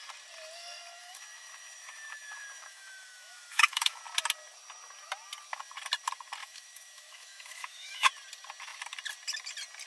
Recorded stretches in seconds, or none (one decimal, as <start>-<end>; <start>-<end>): 0.0-1.0; 4.0-6.4; 8.1-9.9